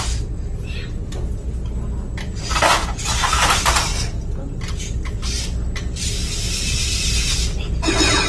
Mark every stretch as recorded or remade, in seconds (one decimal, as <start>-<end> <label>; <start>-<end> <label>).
0.0-8.3 recorded